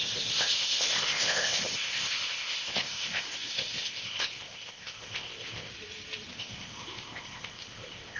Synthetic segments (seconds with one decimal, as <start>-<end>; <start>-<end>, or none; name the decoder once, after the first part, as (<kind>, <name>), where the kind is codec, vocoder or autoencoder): 0.0-5.7 (codec, ZipCodec); 6.3-8.2